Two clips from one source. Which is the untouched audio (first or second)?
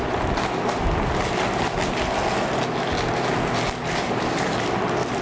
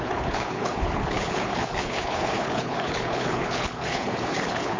first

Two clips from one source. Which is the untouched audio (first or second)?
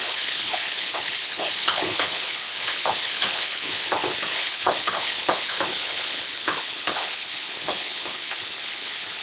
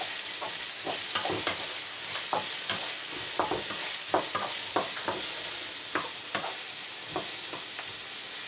second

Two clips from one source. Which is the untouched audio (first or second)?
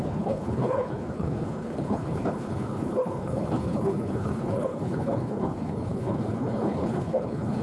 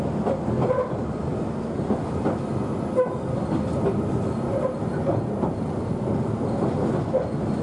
second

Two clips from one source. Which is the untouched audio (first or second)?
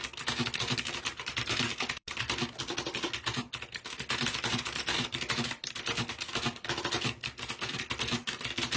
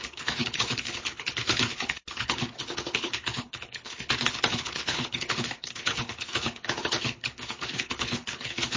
first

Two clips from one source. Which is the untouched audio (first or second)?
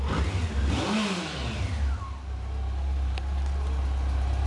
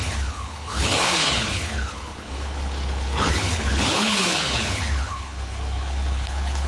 first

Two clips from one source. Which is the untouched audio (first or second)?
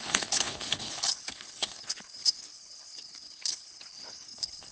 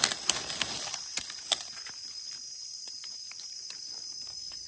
second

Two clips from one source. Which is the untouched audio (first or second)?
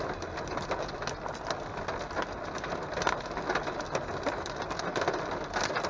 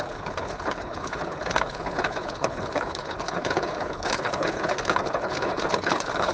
first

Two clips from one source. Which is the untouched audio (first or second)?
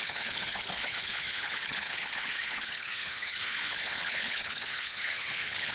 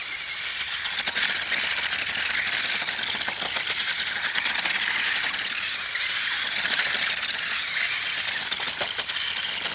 second